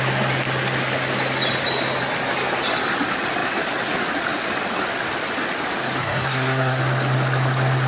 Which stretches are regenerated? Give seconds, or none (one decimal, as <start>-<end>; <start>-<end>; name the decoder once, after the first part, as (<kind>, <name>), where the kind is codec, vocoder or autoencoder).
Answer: 6.0-6.8 (codec, SNAC)